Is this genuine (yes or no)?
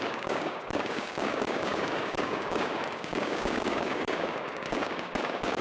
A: no